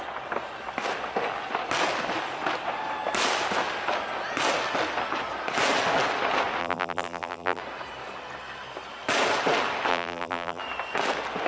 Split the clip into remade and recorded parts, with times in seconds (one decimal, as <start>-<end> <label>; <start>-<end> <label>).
0.0-6.6 recorded; 6.6-7.6 remade; 7.6-9.9 recorded; 9.9-10.6 remade; 10.6-11.5 recorded